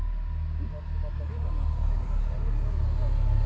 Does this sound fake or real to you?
real